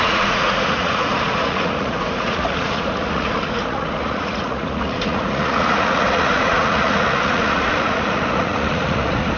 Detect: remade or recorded remade